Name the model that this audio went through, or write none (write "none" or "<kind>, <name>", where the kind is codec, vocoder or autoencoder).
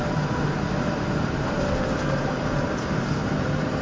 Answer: vocoder, BigVGAN v2